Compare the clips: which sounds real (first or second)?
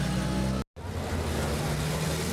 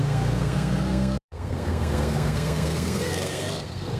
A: first